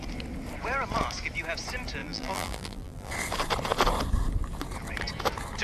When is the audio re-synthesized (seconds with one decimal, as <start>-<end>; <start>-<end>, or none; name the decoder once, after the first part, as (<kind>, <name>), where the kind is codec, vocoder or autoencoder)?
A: 2.0-3.1 (vocoder, BigVGAN v2)